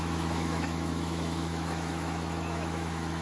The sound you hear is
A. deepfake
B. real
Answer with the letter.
A